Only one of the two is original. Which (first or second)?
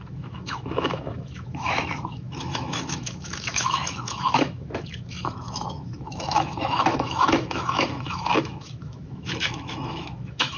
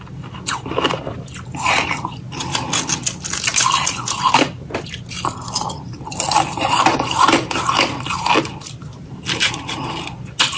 second